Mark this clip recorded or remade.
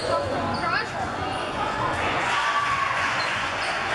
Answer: remade